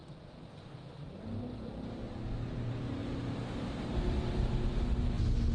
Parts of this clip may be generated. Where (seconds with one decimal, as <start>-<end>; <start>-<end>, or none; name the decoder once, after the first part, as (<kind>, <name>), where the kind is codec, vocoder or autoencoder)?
3.0-4.5 (vocoder, BigVGAN v2)